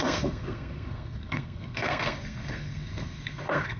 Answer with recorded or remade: remade